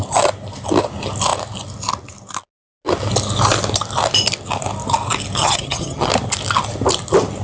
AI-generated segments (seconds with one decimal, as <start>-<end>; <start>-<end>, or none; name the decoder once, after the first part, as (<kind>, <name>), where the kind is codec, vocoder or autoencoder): 5.4-6.1 (vocoder, HiFi-GAN)